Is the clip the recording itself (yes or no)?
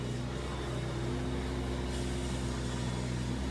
yes